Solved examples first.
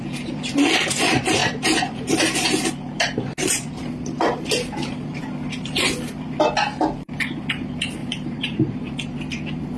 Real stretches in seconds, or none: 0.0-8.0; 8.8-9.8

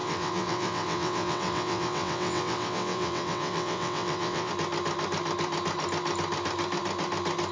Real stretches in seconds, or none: 4.5-7.5

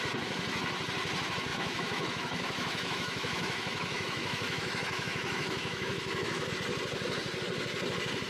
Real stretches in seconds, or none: 0.0-1.5; 6.5-8.3

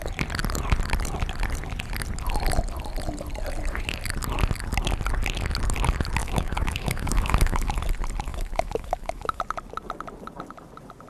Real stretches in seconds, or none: 0.0-6.2; 7.7-8.3; 9.4-11.1